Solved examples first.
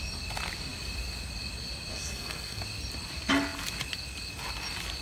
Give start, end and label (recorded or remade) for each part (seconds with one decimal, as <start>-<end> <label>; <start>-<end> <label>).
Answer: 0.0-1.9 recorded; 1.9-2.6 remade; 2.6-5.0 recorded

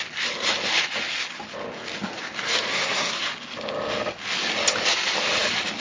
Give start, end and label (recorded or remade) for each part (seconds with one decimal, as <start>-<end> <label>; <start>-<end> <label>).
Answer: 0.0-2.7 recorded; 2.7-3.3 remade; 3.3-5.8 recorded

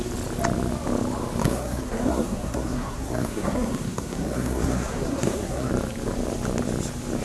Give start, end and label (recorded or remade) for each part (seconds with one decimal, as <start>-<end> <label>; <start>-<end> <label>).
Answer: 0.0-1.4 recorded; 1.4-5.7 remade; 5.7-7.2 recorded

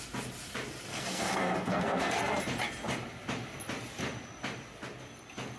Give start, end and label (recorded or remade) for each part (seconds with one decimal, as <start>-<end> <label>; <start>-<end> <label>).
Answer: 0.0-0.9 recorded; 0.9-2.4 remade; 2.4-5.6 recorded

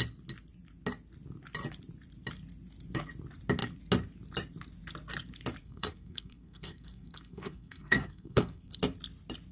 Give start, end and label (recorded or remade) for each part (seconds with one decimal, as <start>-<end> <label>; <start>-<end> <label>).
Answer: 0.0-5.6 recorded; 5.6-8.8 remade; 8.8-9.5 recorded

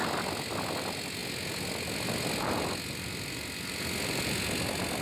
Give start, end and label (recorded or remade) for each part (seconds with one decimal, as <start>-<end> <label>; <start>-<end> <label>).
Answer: 0.0-5.0 recorded

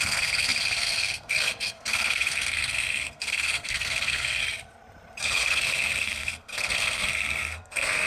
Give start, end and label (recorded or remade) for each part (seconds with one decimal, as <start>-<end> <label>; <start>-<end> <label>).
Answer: 0.0-4.4 remade; 4.4-5.2 recorded; 5.2-8.1 remade

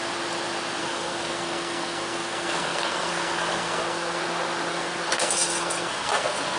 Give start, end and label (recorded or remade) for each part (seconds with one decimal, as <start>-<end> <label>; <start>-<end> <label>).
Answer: 0.0-0.8 recorded; 0.8-4.2 remade; 4.2-4.7 recorded; 4.7-6.6 remade